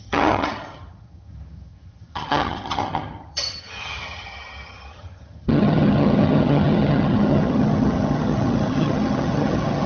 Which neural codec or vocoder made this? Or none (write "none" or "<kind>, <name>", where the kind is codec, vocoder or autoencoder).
vocoder, HiFi-GAN